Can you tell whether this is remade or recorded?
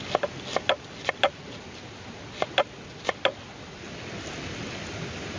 recorded